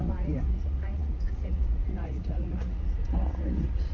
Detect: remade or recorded remade